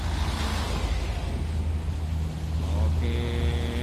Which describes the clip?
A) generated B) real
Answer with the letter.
B